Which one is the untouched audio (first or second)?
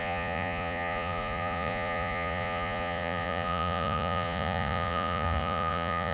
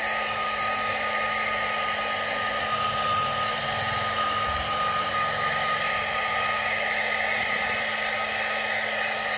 second